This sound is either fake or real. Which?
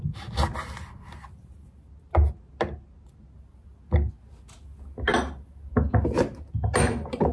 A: real